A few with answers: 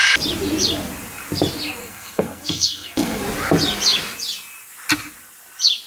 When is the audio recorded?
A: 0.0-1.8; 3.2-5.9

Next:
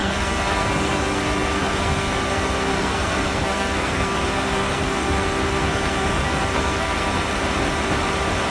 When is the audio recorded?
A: 7.3-8.5

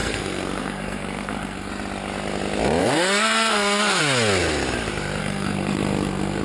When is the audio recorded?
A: 1.7-2.8; 4.0-5.2

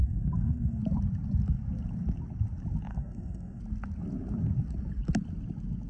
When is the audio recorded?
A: 0.8-2.9; 3.6-5.9

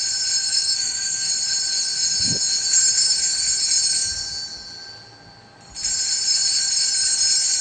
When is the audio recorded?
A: 0.0-0.5; 1.3-7.6

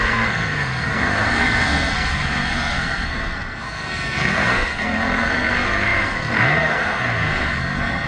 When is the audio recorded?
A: none

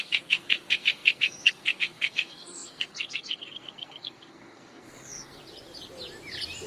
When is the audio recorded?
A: 5.4-6.7